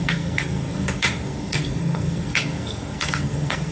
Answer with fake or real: fake